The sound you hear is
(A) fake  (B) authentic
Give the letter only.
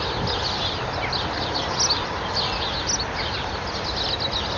B